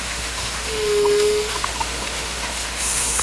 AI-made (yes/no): yes